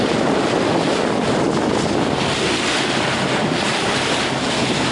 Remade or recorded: recorded